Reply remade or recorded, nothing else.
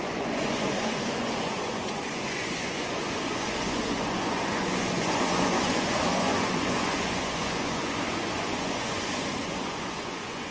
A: remade